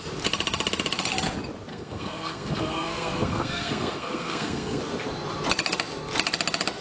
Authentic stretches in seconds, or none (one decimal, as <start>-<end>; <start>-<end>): 0.0-1.7; 4.8-6.8